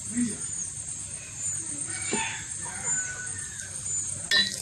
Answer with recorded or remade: recorded